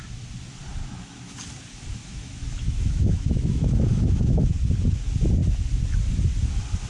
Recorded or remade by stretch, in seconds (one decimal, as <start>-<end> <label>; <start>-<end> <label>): 0.0-0.8 recorded; 0.8-1.4 remade; 1.4-2.0 recorded; 2.0-4.5 remade; 4.5-6.9 recorded